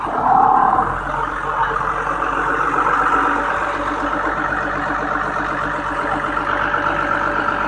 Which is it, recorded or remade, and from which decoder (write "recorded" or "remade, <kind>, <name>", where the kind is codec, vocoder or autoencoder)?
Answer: recorded